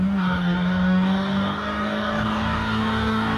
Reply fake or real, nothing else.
fake